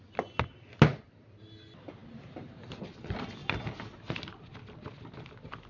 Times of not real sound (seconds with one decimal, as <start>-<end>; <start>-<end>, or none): none